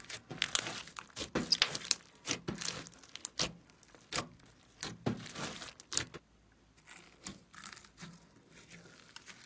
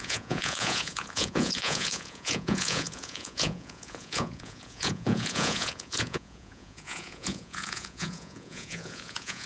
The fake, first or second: second